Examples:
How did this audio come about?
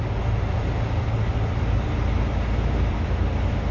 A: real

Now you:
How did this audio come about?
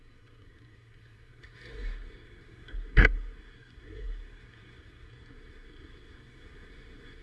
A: fake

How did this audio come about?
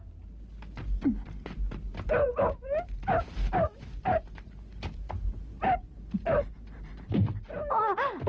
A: real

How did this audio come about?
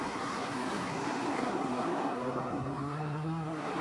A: fake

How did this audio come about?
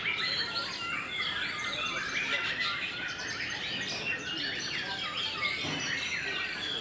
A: real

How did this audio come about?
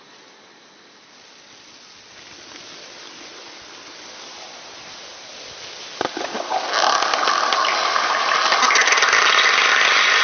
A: real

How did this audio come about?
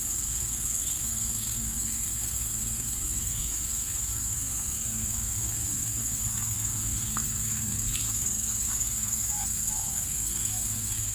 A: fake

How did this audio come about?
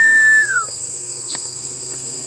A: fake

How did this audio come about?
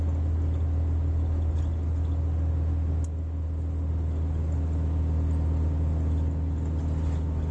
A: real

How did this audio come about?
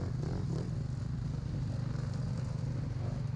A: real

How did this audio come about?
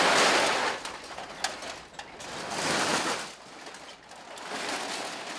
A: real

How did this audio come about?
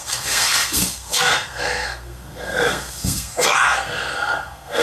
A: fake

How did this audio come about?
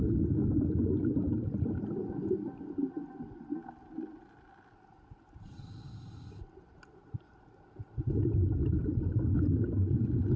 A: real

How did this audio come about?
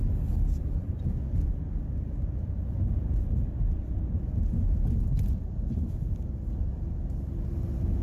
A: real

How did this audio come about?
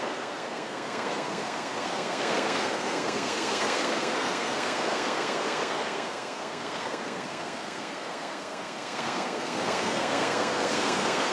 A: fake